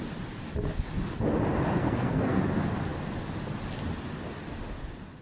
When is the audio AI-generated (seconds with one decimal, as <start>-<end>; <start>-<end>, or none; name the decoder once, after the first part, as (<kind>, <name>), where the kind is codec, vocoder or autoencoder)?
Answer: 1.8-2.4 (codec, SNAC)